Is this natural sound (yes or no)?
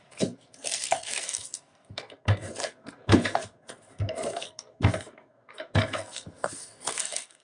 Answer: no